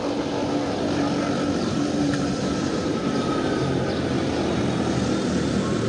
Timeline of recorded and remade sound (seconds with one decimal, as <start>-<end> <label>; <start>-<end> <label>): 0.0-1.6 recorded; 1.6-4.6 remade; 4.6-5.9 recorded